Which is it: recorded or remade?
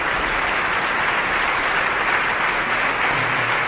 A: recorded